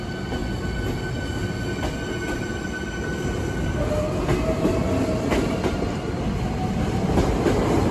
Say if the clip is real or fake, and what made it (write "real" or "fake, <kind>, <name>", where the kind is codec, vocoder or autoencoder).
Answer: real